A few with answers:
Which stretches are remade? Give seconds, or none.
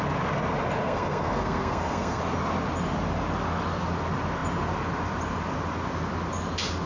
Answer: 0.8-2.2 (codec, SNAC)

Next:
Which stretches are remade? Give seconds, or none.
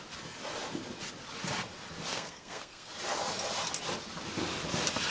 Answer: 2.1-2.9 (codec, SNAC)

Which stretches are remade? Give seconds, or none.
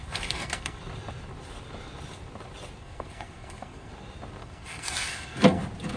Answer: 0.0-0.8 (codec, SNAC); 2.8-3.9; 4.4-5.6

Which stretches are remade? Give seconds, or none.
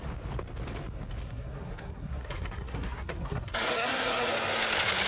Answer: 1.2-4.3 (codec, SNAC)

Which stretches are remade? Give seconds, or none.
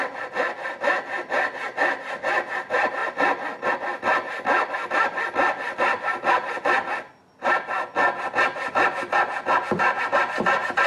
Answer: none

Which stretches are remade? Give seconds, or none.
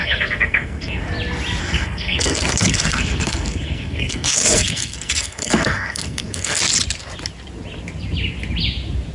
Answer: 0.0-1.0 (codec, SNAC); 1.6-6.6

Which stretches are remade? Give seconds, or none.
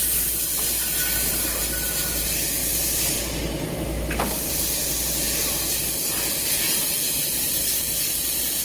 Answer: none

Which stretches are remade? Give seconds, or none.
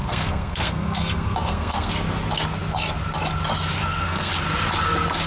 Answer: 0.0-1.9 (codec, SNAC); 3.8-4.3